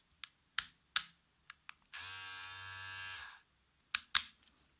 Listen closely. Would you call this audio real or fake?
real